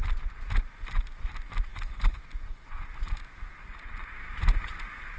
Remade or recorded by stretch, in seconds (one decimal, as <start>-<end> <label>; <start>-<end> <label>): 0.0-1.7 recorded; 1.7-2.2 remade; 2.2-5.2 recorded